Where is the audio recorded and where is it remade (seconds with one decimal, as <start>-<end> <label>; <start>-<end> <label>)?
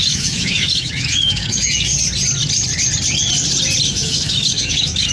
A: 0.0-1.9 remade; 1.9-3.9 recorded; 3.9-5.1 remade